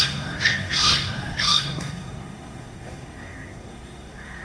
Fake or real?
fake